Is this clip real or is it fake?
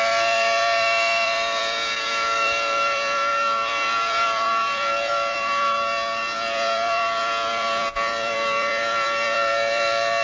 fake